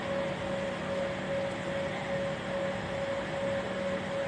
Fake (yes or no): no